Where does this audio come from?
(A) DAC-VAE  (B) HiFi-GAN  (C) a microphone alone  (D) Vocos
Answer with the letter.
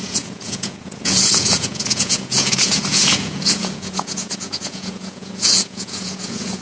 D